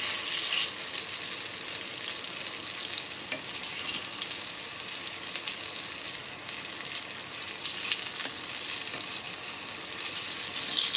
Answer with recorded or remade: recorded